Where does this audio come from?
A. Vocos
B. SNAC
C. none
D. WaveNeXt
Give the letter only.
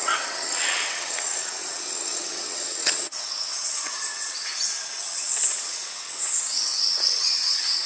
D